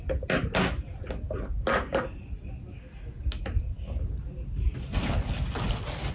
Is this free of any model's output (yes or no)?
yes